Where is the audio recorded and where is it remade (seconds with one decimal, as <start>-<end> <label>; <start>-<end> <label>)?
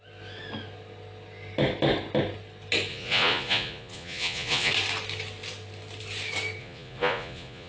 0.0-2.9 recorded; 2.9-4.7 remade; 4.7-6.6 recorded; 6.6-7.7 remade